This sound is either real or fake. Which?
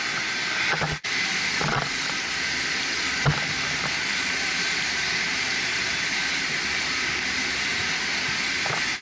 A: real